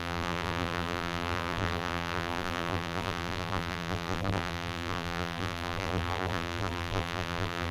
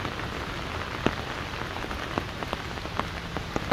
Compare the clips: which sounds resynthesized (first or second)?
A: first